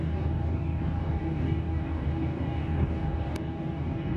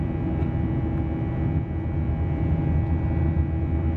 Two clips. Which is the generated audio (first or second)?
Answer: first